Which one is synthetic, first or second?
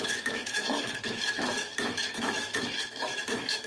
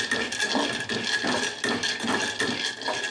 first